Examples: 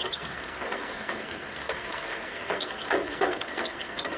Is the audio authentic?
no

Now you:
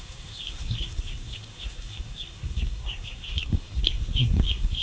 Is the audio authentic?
no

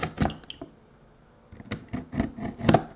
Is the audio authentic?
yes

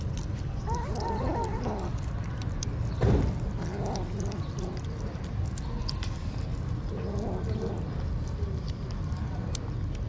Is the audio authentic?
yes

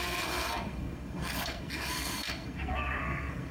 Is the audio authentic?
no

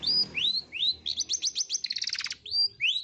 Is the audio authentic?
yes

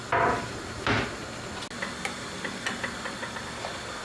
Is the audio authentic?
yes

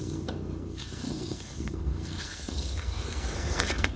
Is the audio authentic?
no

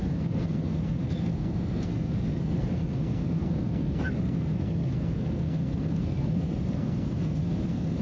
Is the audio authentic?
no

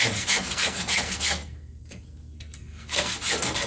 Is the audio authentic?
no